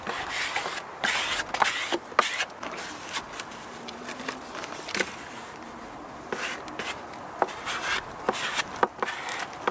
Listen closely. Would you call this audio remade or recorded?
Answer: recorded